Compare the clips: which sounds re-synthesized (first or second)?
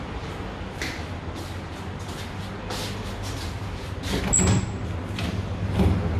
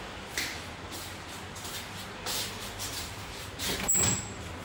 second